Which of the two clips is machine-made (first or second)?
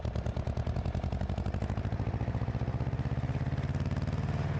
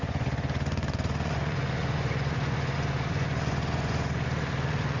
second